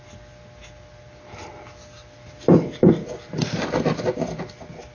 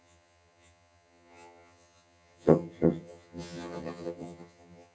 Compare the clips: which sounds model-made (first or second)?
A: second